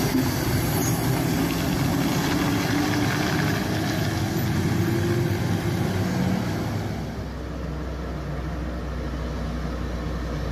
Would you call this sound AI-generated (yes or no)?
no